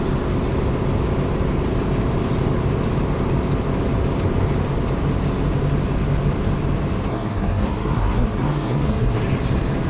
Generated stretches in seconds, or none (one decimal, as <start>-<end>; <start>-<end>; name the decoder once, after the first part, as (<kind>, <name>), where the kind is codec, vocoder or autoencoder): 7.1-9.2 (codec, SNAC)